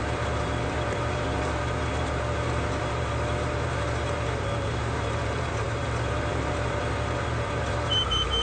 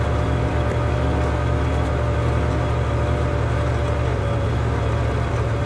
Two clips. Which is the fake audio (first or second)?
first